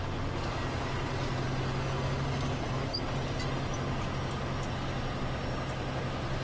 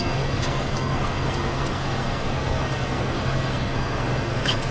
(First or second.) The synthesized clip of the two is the second